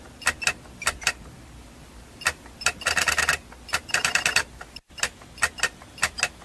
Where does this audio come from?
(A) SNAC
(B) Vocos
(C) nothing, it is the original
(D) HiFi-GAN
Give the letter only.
C